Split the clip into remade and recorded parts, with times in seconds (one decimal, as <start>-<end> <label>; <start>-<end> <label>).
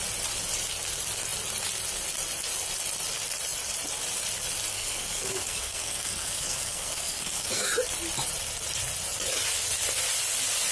0.0-4.7 recorded; 4.7-7.7 remade; 7.7-10.7 recorded